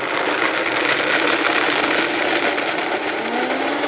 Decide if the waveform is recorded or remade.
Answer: recorded